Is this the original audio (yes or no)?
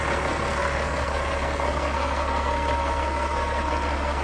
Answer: no